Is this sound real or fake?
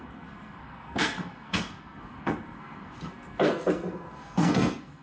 fake